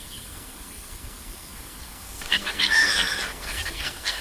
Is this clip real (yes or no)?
no